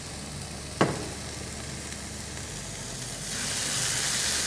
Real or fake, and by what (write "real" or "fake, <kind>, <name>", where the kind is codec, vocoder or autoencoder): real